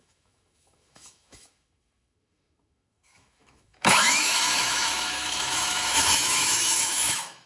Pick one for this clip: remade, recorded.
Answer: remade